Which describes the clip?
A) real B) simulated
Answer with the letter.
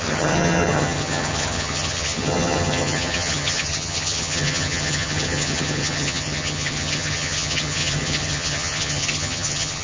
B